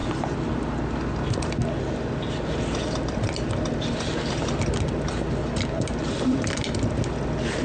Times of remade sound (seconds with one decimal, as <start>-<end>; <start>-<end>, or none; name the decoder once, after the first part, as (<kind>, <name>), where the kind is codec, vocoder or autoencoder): none